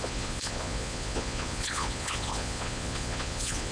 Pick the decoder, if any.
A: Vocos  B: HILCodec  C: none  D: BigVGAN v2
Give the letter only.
A